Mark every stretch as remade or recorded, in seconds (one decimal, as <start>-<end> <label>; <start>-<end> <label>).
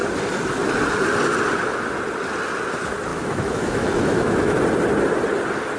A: 0.0-3.1 recorded; 3.1-4.6 remade; 4.6-5.8 recorded